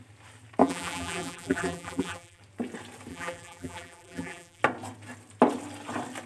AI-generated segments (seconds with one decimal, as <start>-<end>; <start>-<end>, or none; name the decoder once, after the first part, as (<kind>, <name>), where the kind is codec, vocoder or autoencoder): 0.6-2.4 (vocoder, BigVGAN v2); 3.1-4.6